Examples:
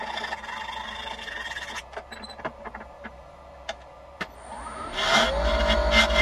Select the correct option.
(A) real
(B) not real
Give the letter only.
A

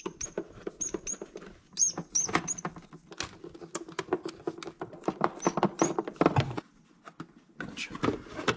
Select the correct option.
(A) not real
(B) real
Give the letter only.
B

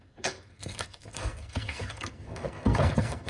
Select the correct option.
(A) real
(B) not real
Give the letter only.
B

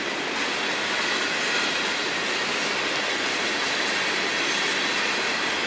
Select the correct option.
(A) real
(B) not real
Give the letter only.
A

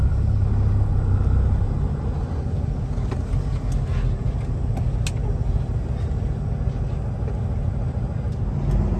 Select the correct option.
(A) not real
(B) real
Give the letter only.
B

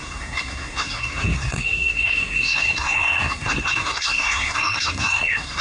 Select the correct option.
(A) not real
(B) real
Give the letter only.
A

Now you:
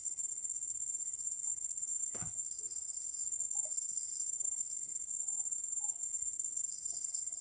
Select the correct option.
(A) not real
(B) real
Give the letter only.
A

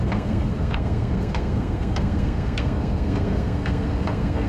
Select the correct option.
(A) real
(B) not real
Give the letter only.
B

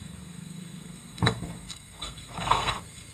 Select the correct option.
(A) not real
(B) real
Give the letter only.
A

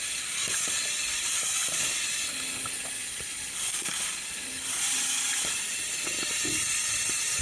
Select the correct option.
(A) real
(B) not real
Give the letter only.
A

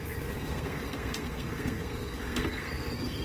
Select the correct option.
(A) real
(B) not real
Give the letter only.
B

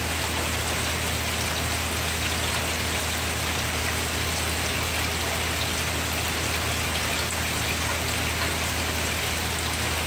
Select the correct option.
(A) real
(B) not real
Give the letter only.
A